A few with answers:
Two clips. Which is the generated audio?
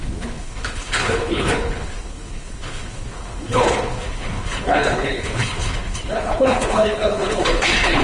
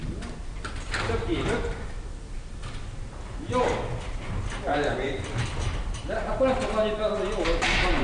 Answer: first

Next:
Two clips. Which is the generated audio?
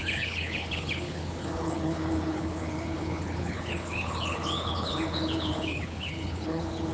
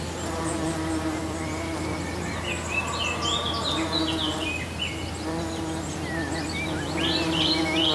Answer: first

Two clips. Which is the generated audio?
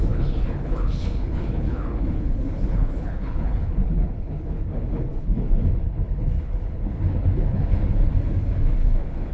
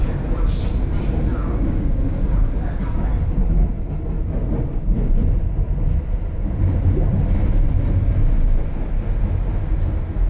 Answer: first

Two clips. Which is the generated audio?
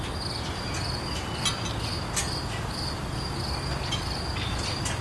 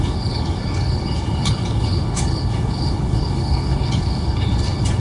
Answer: second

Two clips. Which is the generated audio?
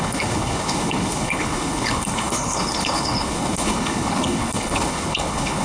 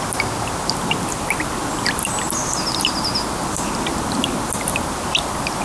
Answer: first